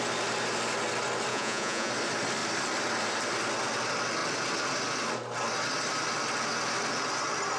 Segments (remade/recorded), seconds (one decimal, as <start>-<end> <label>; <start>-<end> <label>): 0.0-1.3 recorded; 1.3-1.9 remade; 1.9-7.6 recorded